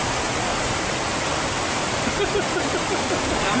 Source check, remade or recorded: recorded